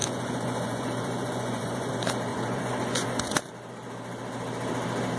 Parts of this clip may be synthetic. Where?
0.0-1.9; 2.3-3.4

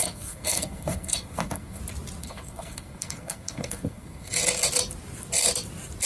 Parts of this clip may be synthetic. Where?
0.0-1.8; 2.2-4.3